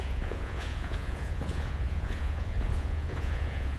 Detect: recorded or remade remade